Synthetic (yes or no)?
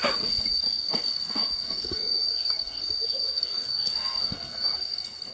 yes